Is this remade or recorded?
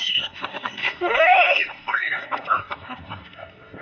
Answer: remade